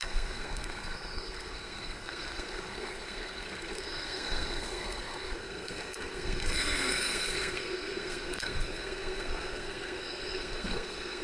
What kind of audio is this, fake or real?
fake